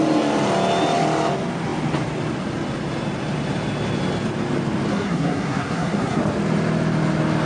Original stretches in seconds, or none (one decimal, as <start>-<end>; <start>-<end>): 0.0-4.9; 6.2-7.5